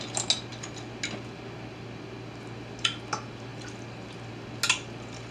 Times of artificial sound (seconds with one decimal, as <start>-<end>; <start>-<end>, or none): none